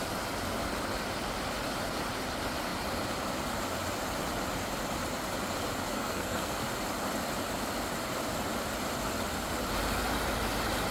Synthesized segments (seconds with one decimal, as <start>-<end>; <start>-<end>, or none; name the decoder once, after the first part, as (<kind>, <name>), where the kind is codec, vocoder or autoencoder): 5.9-6.6 (codec, SNAC)